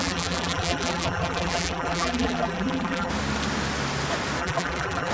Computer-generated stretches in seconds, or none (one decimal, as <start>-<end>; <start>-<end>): 0.0-3.1; 4.4-5.1